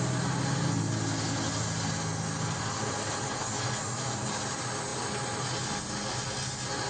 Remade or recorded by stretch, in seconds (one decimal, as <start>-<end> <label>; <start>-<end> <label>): 0.0-6.9 recorded